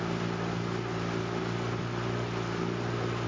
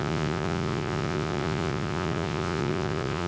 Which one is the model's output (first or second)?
second